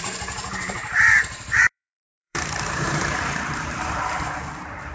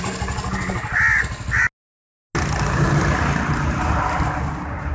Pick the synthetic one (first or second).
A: first